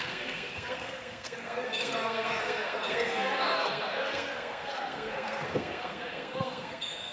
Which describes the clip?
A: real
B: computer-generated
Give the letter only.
B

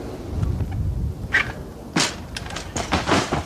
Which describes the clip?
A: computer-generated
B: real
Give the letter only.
B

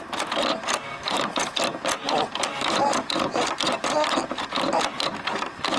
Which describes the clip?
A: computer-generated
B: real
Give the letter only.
B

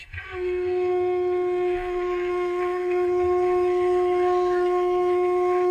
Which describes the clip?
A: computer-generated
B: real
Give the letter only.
A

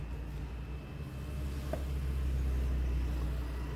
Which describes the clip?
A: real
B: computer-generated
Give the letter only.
A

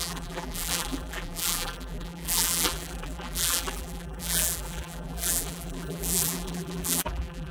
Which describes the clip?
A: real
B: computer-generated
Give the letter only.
B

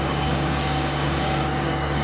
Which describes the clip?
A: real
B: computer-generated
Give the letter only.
B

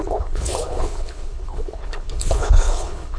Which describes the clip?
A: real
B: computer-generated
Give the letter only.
B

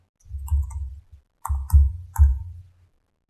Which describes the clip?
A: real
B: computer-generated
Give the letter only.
A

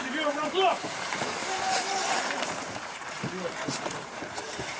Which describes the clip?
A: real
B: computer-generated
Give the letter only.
B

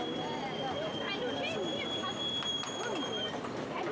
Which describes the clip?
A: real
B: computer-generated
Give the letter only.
A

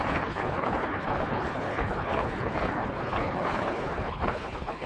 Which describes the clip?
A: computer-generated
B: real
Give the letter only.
A